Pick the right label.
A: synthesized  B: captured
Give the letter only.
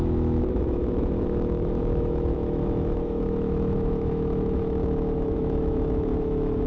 A